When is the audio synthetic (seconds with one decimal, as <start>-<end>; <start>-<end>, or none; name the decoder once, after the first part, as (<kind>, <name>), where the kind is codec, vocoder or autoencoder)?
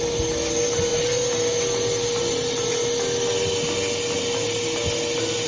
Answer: none